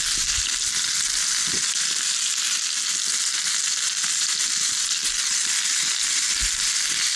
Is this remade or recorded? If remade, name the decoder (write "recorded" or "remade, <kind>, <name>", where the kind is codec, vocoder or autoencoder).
recorded